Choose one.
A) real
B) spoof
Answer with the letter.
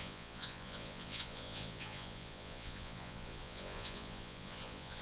B